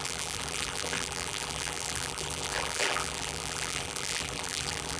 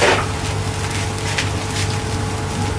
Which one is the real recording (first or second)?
second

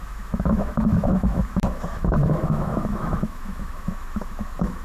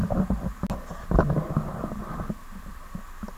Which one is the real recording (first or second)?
second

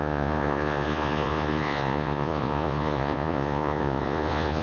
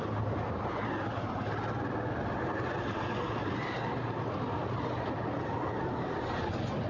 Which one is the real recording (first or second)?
second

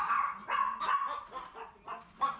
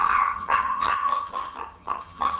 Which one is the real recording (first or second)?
first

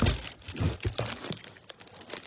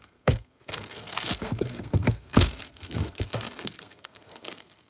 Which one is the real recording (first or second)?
first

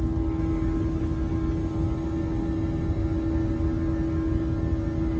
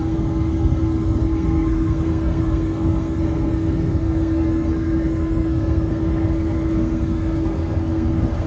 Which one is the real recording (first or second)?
first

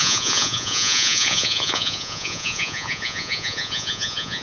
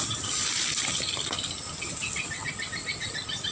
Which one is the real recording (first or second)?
second